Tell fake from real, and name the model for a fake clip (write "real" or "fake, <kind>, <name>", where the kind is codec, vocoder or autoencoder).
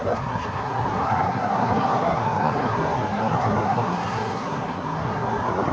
fake, codec, SNAC